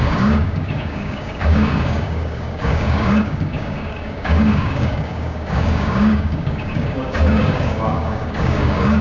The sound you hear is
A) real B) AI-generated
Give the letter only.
B